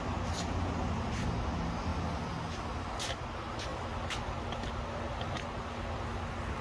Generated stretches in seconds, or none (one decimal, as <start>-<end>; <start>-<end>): none